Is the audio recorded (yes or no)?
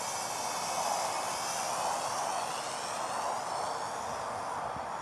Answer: yes